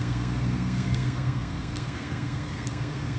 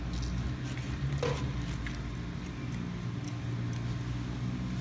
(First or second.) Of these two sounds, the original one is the second